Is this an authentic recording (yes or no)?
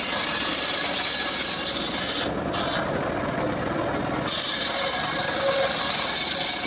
yes